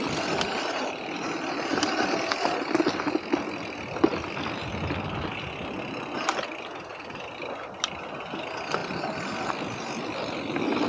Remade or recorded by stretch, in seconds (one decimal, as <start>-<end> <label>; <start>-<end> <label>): 0.0-8.8 recorded; 8.8-9.5 remade; 9.5-10.9 recorded